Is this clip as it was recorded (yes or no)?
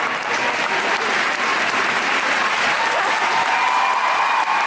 yes